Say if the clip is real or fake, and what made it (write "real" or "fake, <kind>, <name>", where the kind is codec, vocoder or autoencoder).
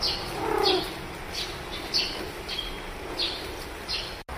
real